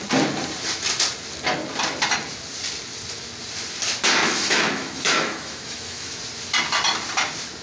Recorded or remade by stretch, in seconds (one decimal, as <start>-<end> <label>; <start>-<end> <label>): 0.0-4.2 recorded; 4.2-6.2 remade; 6.2-7.6 recorded